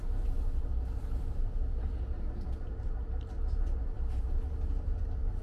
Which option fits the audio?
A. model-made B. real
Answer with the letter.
B